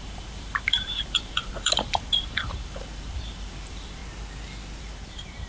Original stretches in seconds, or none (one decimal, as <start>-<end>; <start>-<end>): 4.0-4.8